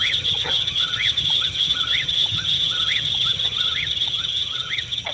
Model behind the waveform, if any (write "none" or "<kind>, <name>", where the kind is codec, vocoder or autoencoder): vocoder, HiFi-GAN